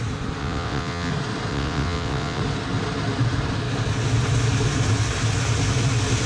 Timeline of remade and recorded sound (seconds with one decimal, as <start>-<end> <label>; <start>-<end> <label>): 0.0-0.4 recorded; 0.4-1.1 remade; 1.1-1.5 recorded; 1.5-2.4 remade; 2.4-6.3 recorded